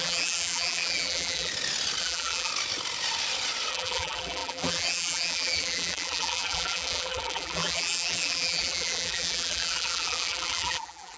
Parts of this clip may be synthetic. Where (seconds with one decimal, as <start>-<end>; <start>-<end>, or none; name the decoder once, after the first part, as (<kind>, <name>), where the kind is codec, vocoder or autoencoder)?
0.0-1.5 (vocoder, BigVGAN v2); 2.0-2.5; 3.7-11.2